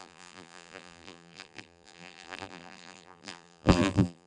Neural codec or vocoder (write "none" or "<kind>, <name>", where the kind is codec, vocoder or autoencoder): vocoder, BigVGAN v2